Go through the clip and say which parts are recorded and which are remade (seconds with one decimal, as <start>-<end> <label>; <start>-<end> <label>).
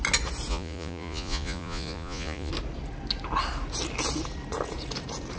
0.0-0.5 recorded; 0.5-2.5 remade; 2.5-5.4 recorded